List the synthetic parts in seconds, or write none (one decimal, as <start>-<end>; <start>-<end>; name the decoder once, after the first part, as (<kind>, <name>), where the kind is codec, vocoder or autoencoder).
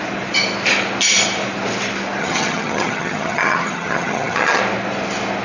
2.2-4.6 (vocoder, HiFi-GAN)